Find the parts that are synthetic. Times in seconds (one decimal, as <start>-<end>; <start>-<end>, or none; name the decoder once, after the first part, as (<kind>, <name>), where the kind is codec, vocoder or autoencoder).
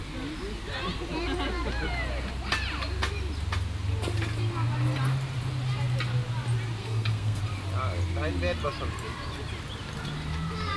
6.8-7.4 (codec, SNAC)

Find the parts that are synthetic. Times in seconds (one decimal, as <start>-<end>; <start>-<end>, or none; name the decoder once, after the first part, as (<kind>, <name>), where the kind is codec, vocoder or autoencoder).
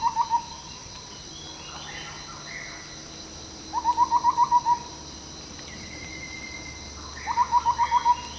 0.8-1.3 (vocoder, WaveNeXt)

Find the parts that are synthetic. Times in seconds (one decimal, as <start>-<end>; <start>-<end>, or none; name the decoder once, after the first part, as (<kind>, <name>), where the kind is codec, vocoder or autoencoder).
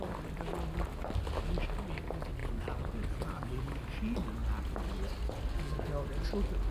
none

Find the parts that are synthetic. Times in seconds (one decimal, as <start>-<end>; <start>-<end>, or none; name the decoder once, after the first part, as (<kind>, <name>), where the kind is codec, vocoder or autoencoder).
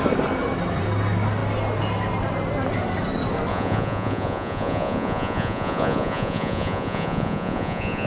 3.5-8.1 (vocoder, Vocos)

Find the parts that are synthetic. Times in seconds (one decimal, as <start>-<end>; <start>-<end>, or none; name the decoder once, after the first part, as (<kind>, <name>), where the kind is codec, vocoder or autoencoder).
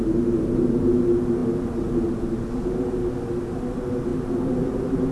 none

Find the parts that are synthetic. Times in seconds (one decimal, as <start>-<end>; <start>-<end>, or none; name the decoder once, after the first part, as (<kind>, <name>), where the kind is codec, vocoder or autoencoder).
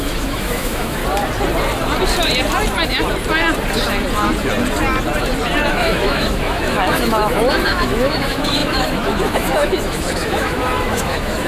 0.0-1.0 (autoencoder, DAC-VAE); 5.7-11.5